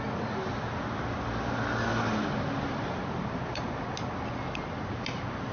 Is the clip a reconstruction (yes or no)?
no